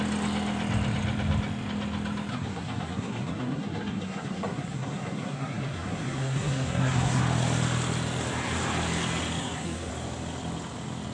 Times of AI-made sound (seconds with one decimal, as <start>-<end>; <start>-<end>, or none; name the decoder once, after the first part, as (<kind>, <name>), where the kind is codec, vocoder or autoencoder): 2.3-7.2 (codec, SNAC); 9.4-9.9